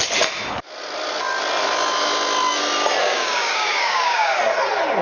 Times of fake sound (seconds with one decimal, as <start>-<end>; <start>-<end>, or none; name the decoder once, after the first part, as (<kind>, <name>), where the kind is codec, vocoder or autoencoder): 3.0-4.4 (codec, DAC)